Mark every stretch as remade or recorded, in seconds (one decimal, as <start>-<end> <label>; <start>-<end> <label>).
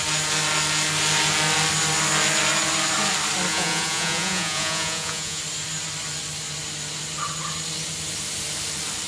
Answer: 0.0-3.5 recorded; 3.5-5.4 remade; 5.4-9.1 recorded